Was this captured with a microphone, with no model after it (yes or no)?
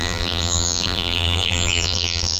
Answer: no